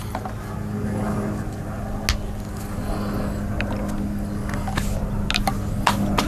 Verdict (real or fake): real